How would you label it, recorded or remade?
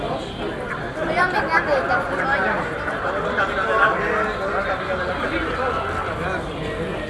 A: recorded